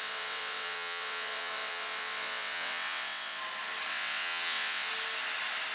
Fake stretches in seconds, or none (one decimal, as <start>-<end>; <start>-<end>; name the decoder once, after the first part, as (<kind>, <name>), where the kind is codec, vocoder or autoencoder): 0.0-3.4 (vocoder, WaveNeXt); 3.9-4.9